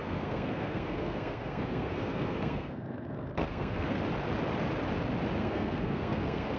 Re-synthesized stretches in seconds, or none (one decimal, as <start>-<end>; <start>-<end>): 0.0-4.0; 5.4-6.6